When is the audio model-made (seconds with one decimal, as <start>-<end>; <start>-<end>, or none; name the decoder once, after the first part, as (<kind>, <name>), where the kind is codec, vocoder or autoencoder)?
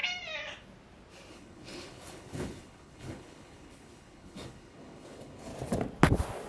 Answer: 1.3-5.5 (codec, HILCodec)